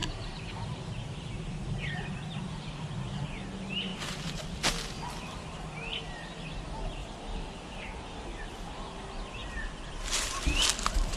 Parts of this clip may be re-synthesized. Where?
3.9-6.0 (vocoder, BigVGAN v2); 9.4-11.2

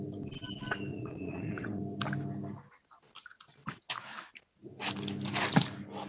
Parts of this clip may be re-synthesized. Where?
0.9-1.8 (vocoder, Vocos)

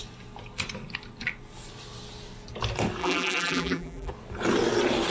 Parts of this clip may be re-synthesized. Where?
3.0-4.1 (vocoder, BigVGAN v2)

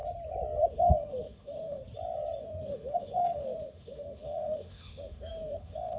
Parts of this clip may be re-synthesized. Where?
0.7-1.8 (autoencoder, DAC-VAE); 2.4-6.0

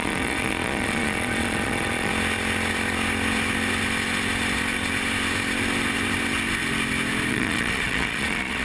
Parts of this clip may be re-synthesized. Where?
0.0-2.1 (vocoder, Vocos); 7.3-8.6

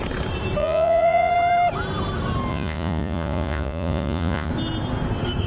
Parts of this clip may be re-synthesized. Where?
0.6-1.3 (vocoder, Vocos); 2.5-4.5

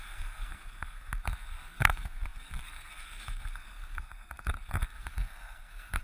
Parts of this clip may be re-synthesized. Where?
0.0-6.0 (codec, SNAC)